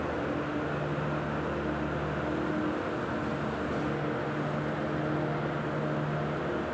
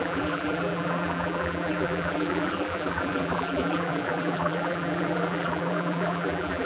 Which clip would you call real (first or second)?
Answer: first